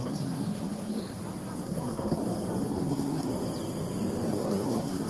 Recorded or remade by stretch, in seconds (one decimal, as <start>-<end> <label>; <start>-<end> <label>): 0.0-1.0 remade; 1.0-1.6 recorded; 1.6-2.2 remade; 2.2-2.7 recorded; 2.7-3.3 remade; 3.3-4.3 recorded; 4.3-5.1 remade